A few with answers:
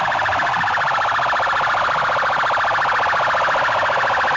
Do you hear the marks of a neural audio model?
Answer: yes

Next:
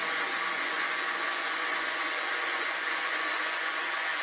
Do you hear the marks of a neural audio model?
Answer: yes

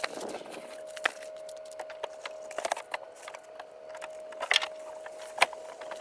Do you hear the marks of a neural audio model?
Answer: no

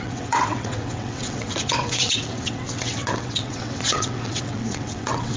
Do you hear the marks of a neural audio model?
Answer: yes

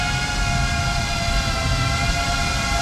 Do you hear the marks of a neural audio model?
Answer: no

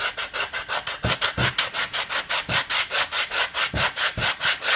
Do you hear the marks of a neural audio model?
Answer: no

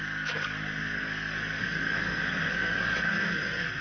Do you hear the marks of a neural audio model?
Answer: yes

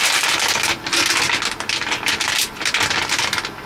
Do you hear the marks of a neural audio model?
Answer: no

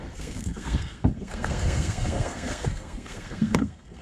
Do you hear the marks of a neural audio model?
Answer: yes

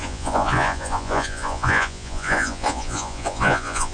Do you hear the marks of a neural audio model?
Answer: yes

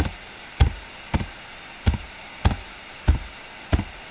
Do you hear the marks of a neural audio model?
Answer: no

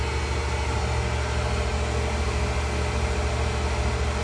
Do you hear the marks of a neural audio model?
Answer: no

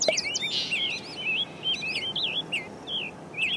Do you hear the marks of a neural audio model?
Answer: no